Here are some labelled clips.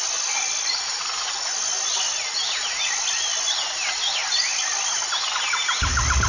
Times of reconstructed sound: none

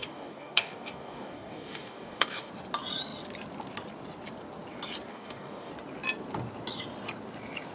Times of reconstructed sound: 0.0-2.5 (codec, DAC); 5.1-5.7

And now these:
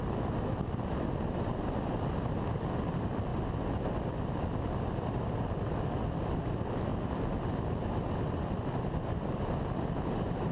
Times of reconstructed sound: none